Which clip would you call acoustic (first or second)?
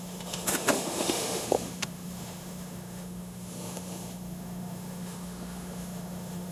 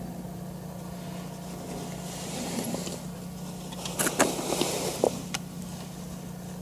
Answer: second